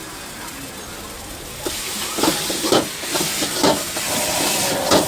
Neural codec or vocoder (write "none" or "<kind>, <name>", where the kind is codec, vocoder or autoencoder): none